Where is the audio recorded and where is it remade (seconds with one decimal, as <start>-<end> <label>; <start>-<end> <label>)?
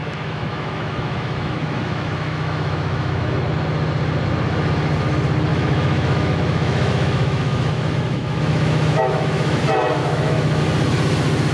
0.0-3.4 remade; 3.4-5.5 recorded; 5.5-9.6 remade; 9.6-10.0 recorded; 10.0-10.6 remade; 10.6-11.5 recorded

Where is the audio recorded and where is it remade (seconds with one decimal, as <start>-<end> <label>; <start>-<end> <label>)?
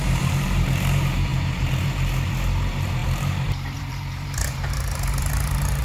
0.0-5.8 remade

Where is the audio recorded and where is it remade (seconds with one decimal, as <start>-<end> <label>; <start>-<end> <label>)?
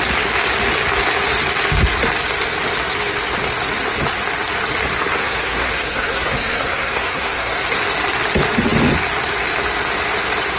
0.0-5.1 recorded; 5.1-7.8 remade; 7.8-10.6 recorded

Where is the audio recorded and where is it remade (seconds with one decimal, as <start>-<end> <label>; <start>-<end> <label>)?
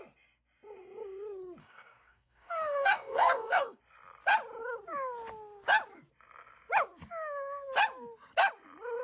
0.0-1.6 recorded; 1.6-3.8 remade; 3.8-9.0 recorded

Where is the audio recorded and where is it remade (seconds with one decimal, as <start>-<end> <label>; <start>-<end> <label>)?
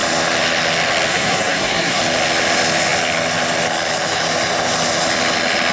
0.0-1.1 recorded; 1.1-2.0 remade; 2.0-5.7 recorded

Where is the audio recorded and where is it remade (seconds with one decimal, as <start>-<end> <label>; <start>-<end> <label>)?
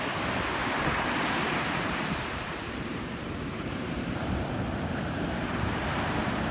0.0-0.6 recorded; 0.6-4.5 remade; 4.5-6.5 recorded